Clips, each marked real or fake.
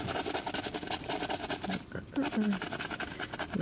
real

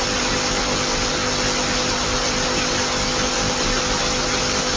real